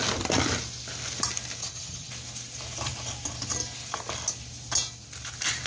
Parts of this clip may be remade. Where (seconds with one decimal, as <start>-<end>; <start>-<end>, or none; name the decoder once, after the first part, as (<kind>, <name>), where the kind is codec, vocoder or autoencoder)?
1.6-2.1 (vocoder, HiFi-GAN)